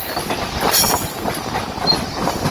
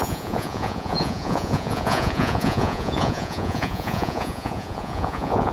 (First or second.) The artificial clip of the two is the second